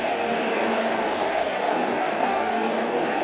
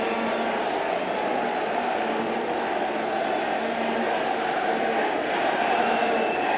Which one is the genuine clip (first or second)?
second